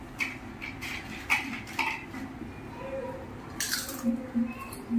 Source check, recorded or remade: recorded